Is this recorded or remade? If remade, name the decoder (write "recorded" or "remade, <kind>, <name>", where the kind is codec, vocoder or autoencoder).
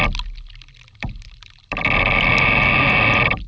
recorded